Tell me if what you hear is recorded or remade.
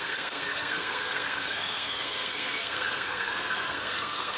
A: remade